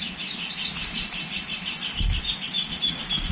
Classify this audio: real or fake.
real